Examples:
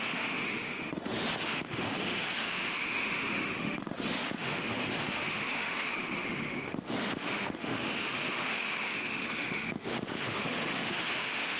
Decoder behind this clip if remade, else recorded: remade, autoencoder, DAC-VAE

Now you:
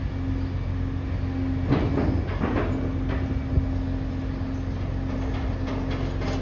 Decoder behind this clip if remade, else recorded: recorded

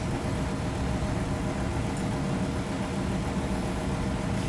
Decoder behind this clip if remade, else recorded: recorded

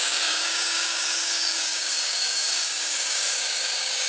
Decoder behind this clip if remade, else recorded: remade, codec, DAC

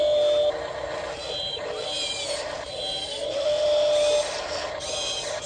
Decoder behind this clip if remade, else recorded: recorded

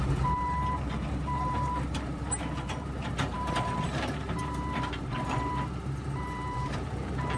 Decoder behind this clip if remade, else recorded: remade, vocoder, BigVGAN v2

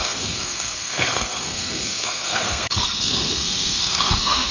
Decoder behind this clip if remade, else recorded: remade, codec, SNAC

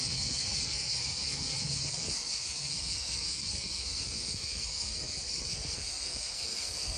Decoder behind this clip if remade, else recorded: remade, codec, SNAC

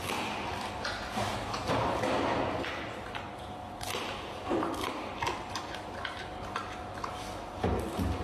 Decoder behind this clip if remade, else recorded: recorded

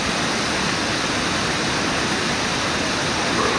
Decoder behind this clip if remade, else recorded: recorded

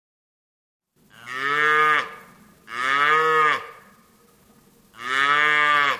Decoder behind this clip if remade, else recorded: recorded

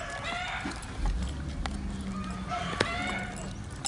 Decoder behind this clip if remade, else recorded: recorded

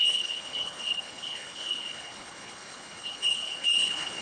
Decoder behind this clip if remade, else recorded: remade, codec, HILCodec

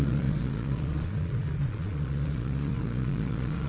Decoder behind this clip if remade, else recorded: remade, vocoder, Vocos